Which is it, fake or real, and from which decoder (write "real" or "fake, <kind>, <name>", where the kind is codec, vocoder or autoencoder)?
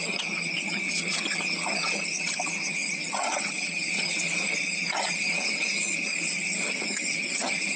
fake, vocoder, HiFi-GAN